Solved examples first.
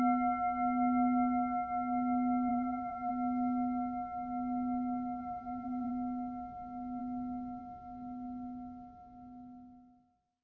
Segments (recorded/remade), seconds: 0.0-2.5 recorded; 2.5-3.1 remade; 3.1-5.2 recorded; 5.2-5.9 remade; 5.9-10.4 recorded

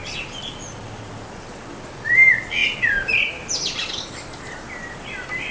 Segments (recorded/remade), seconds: 0.0-5.5 recorded

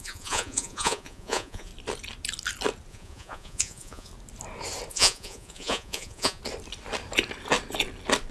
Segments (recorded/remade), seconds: 0.0-1.7 remade; 1.7-2.9 recorded; 2.9-4.1 remade; 4.1-4.9 recorded; 4.9-6.4 remade; 6.4-8.3 recorded

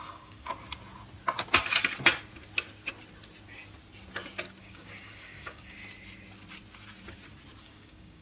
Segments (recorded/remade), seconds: 0.0-0.5 remade; 0.5-4.6 recorded; 4.6-5.8 remade; 5.8-7.6 recorded; 7.6-8.2 remade

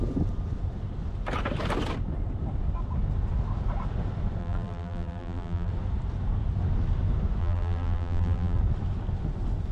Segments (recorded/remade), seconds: 0.0-4.4 recorded; 4.4-5.7 remade; 5.7-7.4 recorded; 7.4-8.6 remade; 8.6-9.7 recorded